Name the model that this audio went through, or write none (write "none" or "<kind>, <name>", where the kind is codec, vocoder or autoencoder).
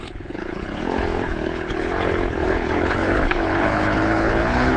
codec, HILCodec